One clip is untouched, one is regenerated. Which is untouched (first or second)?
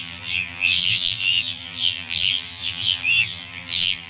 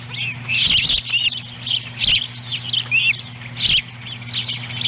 second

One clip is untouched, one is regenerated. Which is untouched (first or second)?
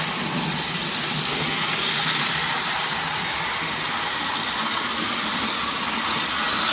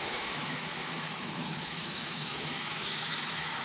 first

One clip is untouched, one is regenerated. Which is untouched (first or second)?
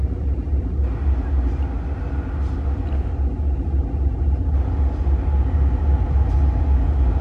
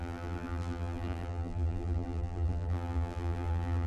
first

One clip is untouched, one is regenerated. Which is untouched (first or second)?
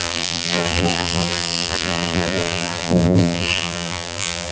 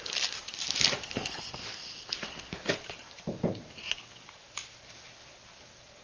second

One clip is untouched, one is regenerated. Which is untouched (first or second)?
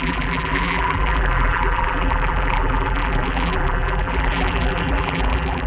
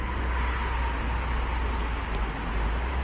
second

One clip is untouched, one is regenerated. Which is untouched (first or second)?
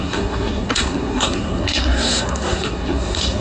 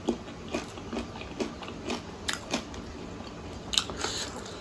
second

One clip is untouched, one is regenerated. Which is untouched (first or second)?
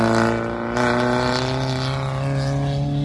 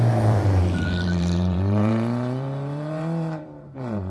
first